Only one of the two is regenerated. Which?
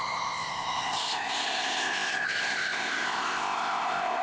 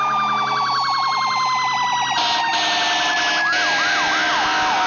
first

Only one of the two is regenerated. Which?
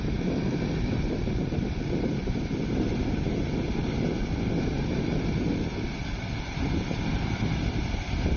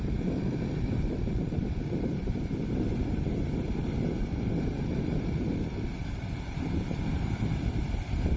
second